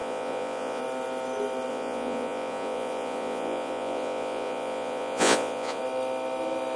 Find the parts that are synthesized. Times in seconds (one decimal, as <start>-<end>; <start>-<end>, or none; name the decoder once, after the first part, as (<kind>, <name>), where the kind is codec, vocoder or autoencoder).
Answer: 0.0-0.8 (vocoder, Vocos); 1.7-5.8